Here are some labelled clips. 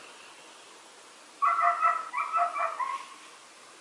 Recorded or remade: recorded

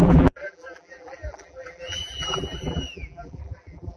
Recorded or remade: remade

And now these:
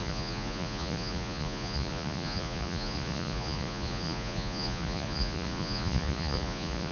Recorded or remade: remade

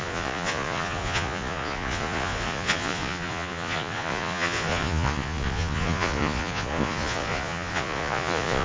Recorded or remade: remade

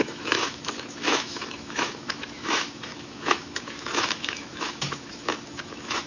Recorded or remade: remade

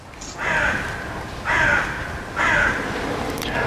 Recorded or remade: recorded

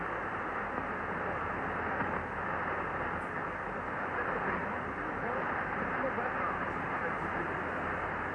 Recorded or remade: recorded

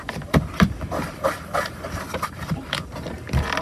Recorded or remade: remade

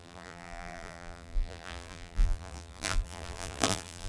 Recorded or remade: remade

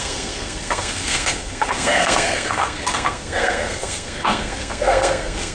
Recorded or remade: remade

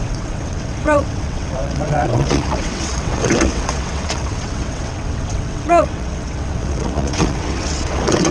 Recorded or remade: remade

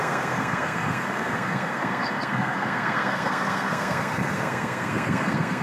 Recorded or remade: remade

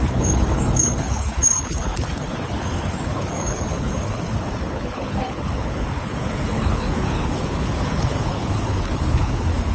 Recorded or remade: remade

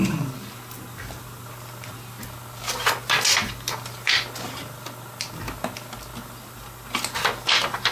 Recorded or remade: recorded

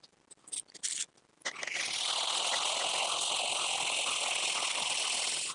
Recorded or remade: recorded